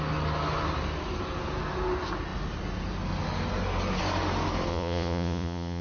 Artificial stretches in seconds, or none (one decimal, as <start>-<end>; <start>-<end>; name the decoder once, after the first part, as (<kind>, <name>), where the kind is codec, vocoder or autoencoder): 4.7-5.8 (vocoder, Vocos)